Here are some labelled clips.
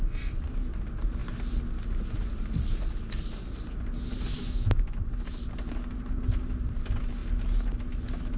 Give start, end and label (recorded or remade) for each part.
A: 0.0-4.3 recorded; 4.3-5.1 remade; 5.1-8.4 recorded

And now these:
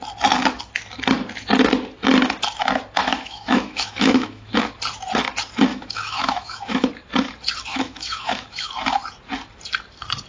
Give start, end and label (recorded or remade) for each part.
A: 0.0-3.0 recorded; 3.0-4.5 remade; 4.5-5.7 recorded; 5.7-6.9 remade; 6.9-7.7 recorded; 7.7-8.7 remade; 8.7-10.3 recorded

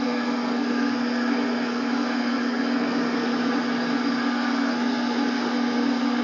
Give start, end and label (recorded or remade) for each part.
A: 0.0-3.3 remade; 3.3-4.2 recorded; 4.2-6.2 remade

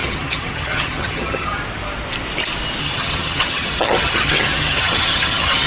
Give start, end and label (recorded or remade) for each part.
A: 0.0-1.6 remade; 1.6-2.8 recorded; 2.8-5.7 remade

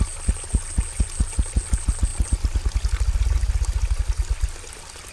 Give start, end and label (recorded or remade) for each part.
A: 0.0-5.1 recorded